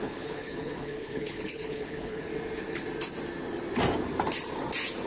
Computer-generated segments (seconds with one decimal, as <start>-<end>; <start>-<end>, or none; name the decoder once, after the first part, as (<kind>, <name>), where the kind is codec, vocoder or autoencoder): 0.0-2.3 (codec, HILCodec)